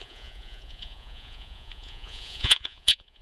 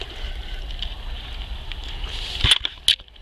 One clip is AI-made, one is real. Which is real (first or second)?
second